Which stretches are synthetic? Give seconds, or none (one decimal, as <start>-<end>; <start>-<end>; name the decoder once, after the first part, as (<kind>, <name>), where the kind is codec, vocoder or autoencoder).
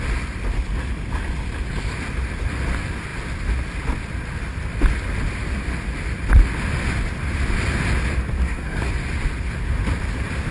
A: 8.4-8.9 (codec, SNAC)